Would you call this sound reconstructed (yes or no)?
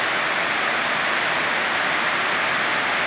no